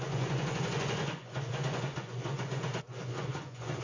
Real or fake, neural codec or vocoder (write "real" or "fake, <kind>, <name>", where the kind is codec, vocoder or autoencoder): fake, vocoder, Vocos